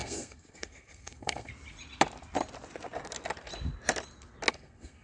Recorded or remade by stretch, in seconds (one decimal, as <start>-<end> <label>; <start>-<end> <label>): 0.0-1.5 remade; 1.5-4.5 recorded; 4.5-5.0 remade